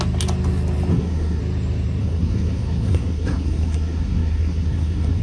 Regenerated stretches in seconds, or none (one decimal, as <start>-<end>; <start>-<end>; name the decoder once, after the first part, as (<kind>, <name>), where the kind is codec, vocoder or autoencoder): 0.9-1.4 (codec, SNAC); 2.0-5.2